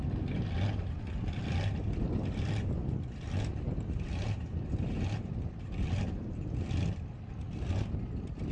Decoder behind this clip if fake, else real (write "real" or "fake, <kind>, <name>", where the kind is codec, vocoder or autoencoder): real